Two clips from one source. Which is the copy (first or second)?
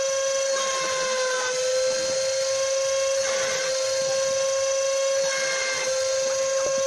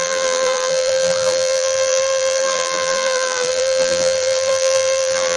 second